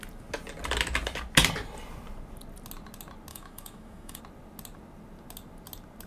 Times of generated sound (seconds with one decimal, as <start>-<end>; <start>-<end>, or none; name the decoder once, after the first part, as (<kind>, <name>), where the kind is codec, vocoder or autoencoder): 3.3-4.2 (autoencoder, DAC-VAE)